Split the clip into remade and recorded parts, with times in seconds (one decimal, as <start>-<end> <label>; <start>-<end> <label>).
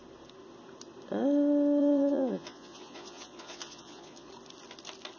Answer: 0.0-1.8 recorded; 1.8-4.3 remade; 4.3-5.2 recorded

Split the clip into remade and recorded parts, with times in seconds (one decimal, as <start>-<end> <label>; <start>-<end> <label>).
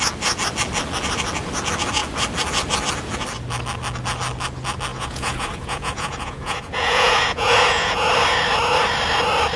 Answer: 0.0-4.9 recorded; 4.9-8.1 remade; 8.1-9.6 recorded